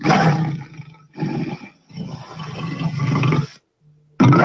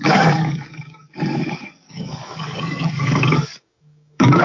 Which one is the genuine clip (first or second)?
first